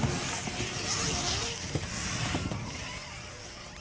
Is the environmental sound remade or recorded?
recorded